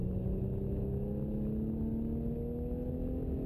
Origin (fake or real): real